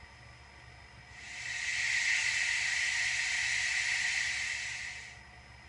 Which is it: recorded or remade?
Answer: recorded